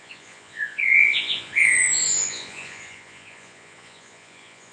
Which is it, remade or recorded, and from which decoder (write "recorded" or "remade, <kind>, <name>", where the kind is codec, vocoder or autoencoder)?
remade, vocoder, Vocos